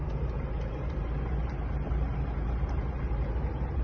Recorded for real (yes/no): no